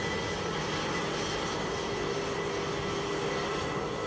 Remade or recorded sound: recorded